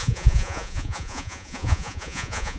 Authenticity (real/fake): fake